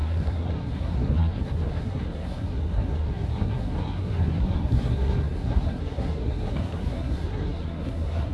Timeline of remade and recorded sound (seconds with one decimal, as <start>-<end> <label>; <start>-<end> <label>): 0.0-8.3 remade